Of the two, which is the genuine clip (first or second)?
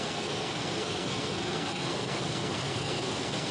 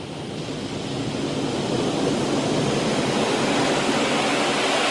second